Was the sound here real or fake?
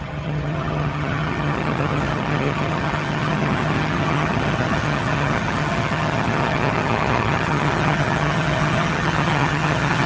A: fake